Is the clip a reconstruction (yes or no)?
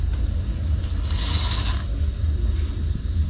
no